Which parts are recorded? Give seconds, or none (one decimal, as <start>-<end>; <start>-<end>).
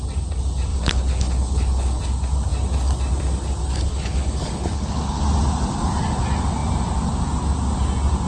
0.0-0.7; 2.0-3.6; 5.2-8.3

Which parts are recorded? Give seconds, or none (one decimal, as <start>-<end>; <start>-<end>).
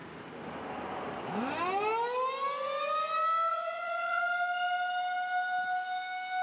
0.0-3.5; 4.2-6.4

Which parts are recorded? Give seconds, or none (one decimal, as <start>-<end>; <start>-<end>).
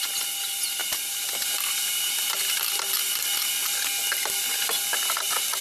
0.0-5.6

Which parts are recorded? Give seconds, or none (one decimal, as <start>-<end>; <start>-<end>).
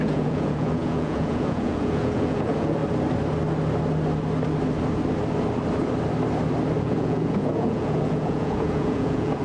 2.8-6.8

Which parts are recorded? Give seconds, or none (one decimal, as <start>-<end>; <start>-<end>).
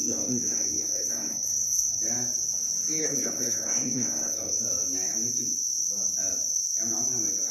2.0-3.0; 4.6-7.5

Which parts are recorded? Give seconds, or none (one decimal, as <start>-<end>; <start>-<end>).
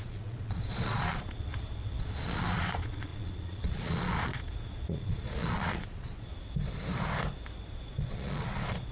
1.5-2.0; 6.3-7.7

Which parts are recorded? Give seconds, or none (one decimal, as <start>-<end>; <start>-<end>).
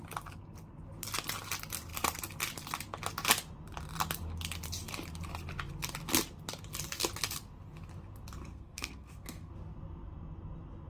0.0-8.5; 9.5-10.9